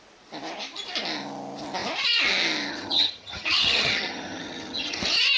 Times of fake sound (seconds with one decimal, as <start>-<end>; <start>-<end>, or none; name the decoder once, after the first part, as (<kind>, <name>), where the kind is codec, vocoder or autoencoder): 2.7-5.0 (vocoder, HiFi-GAN)